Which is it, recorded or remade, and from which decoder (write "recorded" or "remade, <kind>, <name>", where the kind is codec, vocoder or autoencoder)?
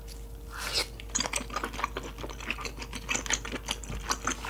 recorded